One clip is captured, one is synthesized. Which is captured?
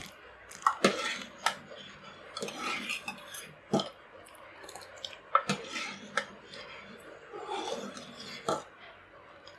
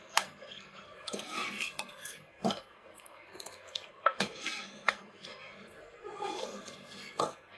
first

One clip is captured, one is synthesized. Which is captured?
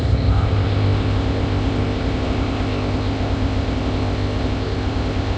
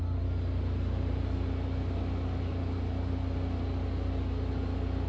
second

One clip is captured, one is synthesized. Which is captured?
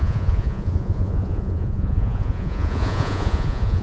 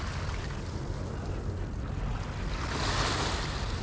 second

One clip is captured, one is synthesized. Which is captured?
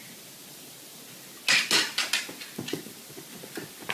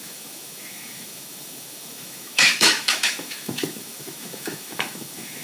first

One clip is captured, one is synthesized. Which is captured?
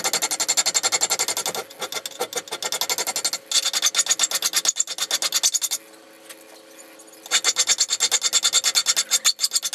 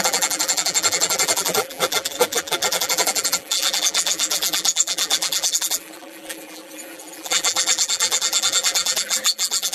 first